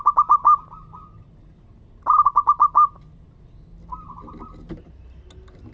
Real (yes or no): yes